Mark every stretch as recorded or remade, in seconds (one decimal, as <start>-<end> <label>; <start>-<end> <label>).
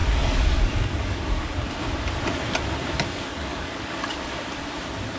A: 0.0-1.5 remade; 1.5-3.3 recorded; 3.3-4.3 remade; 4.3-5.2 recorded